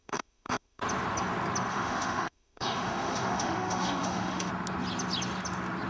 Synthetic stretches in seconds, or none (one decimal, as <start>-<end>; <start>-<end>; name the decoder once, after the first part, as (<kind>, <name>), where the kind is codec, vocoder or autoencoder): 0.0-0.8 (autoencoder, DAC-VAE); 1.7-4.5